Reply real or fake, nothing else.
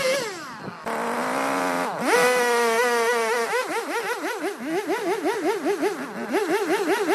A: real